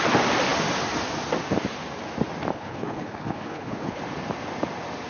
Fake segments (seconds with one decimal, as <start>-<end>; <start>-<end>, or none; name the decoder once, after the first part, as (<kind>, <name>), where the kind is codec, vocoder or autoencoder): 2.5-4.0 (codec, HILCodec)